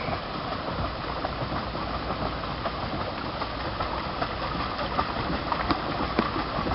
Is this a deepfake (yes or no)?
no